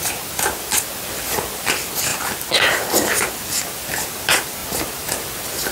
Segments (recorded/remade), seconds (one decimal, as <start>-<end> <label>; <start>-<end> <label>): 0.0-5.7 recorded